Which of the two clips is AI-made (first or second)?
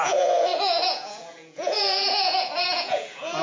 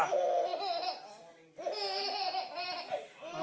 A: first